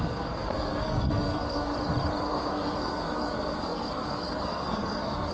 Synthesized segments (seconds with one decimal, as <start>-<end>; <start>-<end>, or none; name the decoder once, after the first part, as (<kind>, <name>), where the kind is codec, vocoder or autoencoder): 0.0-1.7 (codec, SNAC); 2.2-5.3